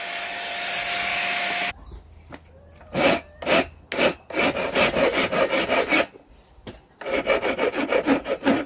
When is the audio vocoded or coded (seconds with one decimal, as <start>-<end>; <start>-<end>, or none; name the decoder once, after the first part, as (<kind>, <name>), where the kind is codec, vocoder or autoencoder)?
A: 1.1-1.7 (autoencoder, DAC-VAE)